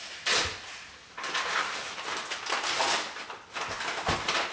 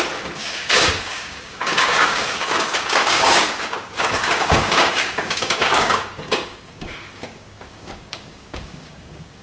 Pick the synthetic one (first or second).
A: second